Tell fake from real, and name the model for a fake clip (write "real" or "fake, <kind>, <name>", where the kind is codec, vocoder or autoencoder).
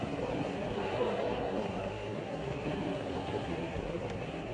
fake, codec, SNAC